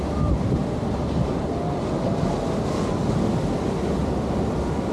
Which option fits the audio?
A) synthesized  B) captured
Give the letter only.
B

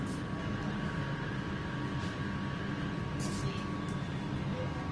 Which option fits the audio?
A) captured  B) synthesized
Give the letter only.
A